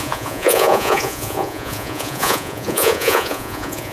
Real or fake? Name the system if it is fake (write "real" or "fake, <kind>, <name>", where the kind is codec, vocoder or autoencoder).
fake, vocoder, Vocos